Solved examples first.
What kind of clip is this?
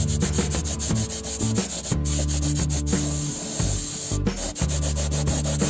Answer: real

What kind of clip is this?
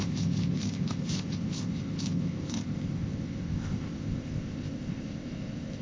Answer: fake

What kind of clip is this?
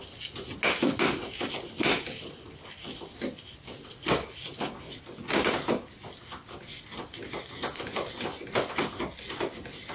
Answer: real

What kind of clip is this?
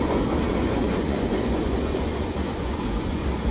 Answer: fake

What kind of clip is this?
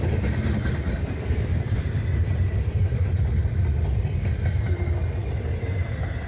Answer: real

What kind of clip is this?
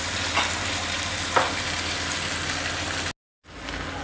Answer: real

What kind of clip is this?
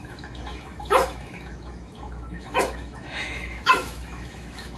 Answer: fake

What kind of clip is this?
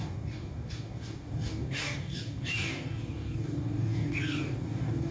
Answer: fake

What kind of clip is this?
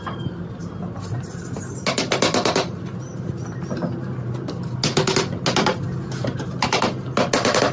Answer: real